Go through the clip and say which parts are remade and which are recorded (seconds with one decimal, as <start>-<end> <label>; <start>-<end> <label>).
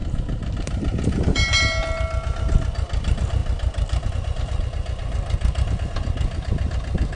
0.0-7.2 recorded